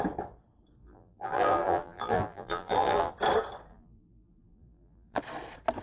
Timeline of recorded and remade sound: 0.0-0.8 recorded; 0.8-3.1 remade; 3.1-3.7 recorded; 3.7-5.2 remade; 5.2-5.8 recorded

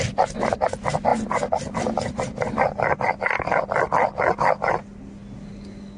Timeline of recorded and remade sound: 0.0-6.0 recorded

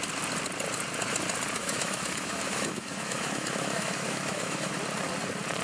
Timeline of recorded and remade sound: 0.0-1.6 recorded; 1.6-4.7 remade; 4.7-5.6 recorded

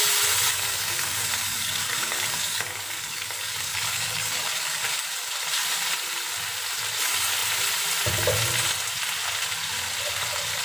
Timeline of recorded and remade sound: 0.0-0.5 recorded; 0.5-5.3 remade; 5.3-10.6 recorded

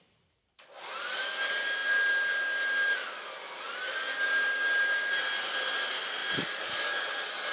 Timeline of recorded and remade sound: 0.0-7.5 recorded

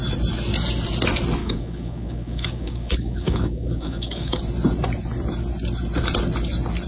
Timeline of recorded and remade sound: 0.0-1.4 recorded; 1.4-4.4 remade; 4.4-6.9 recorded